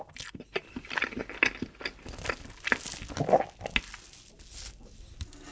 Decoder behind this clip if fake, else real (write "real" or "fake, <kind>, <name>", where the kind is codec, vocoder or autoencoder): real